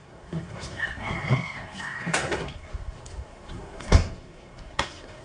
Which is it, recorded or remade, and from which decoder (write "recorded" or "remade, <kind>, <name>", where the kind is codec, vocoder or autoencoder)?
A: remade, codec, SNAC